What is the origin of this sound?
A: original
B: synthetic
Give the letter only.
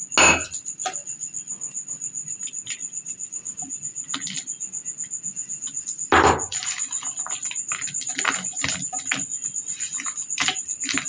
A